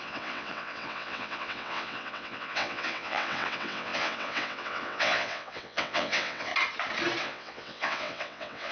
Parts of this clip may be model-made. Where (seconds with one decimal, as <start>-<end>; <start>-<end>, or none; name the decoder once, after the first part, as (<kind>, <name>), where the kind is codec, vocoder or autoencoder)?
0.0-6.5 (vocoder, WaveNeXt); 7.2-8.7

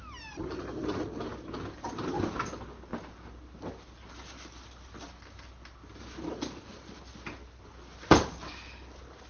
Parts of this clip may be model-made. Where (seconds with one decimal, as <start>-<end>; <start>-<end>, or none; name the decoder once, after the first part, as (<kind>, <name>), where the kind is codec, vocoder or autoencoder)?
none

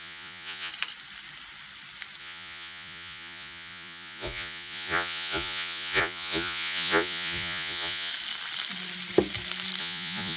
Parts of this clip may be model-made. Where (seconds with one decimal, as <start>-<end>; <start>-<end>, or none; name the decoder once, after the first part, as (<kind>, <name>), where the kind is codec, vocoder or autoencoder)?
0.0-0.7 (vocoder, Vocos); 2.2-8.1; 9.8-10.4

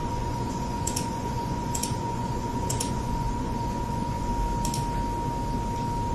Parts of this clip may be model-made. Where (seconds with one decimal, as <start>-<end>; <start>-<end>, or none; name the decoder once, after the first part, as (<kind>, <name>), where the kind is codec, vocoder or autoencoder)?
0.0-4.3 (vocoder, Vocos)